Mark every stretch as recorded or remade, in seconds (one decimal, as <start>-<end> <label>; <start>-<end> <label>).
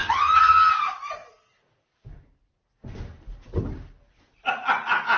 0.0-0.7 remade; 0.7-5.2 recorded